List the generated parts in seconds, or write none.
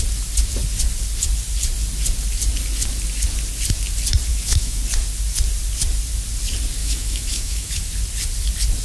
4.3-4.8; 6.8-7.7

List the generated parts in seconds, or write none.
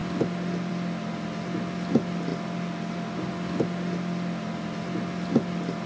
none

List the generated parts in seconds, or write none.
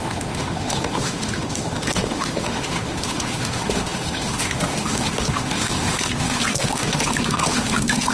0.0-8.1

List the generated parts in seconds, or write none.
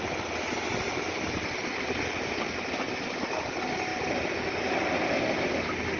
none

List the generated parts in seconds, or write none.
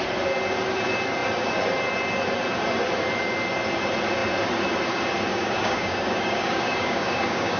5.3-7.6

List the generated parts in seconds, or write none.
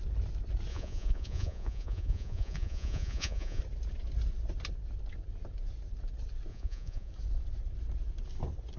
0.7-3.6; 6.5-7.1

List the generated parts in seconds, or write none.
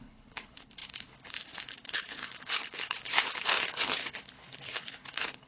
0.0-5.5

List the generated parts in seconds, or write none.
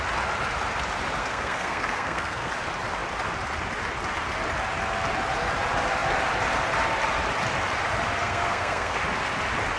1.2-2.5; 8.2-9.0